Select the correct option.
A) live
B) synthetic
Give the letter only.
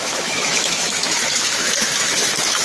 B